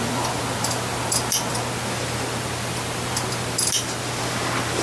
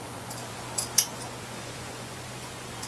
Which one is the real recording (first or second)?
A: first